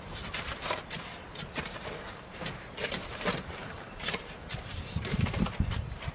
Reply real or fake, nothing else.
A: fake